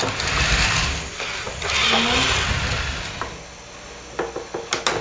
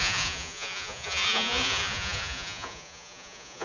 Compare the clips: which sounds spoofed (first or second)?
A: second